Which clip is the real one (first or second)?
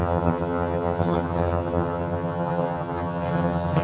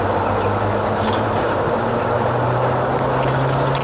second